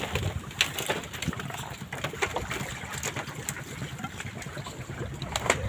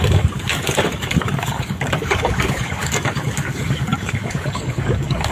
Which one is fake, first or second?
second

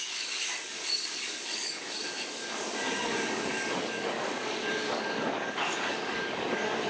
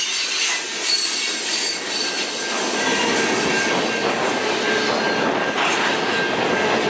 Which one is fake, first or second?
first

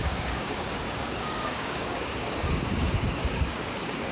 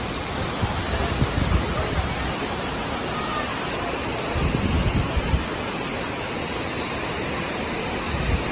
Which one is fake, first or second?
first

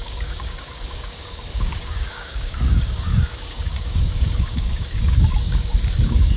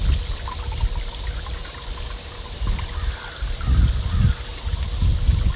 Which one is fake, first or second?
first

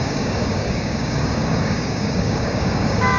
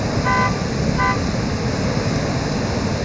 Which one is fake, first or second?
first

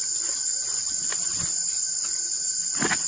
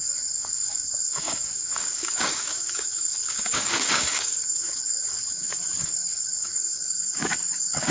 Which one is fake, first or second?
second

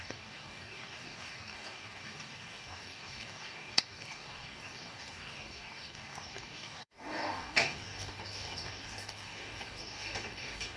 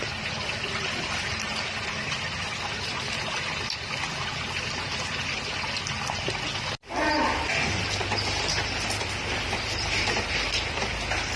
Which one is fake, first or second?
first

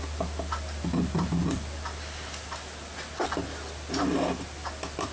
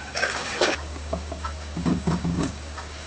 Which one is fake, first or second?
second